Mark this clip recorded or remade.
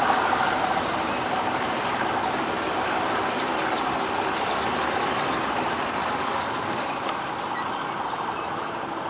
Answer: recorded